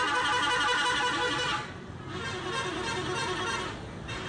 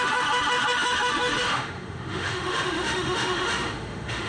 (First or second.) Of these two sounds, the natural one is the first